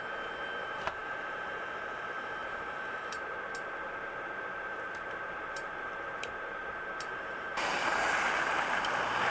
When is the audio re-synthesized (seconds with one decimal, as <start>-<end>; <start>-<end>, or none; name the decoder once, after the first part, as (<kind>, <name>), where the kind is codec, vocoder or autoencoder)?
0.0-9.3 (vocoder, BigVGAN v2)